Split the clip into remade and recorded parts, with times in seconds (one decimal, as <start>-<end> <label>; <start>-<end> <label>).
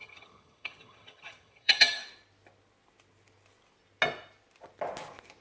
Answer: 0.0-2.0 remade; 2.0-5.4 recorded